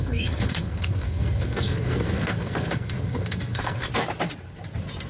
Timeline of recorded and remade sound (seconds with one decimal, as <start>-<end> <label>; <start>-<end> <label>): 0.0-3.9 remade; 3.9-5.1 recorded